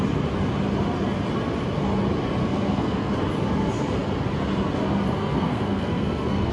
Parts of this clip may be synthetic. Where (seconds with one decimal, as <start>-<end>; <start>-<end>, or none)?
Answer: 2.4-3.1; 5.2-6.5